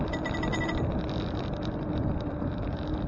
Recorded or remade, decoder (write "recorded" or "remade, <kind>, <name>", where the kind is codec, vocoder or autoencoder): recorded